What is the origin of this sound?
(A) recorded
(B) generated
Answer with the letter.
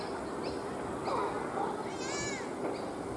A